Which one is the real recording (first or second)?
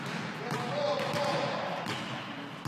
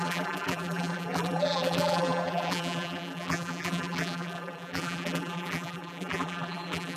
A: first